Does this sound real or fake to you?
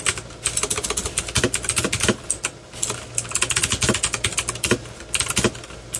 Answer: real